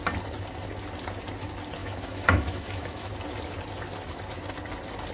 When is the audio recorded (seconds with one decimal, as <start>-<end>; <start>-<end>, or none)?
0.0-1.8; 3.1-5.1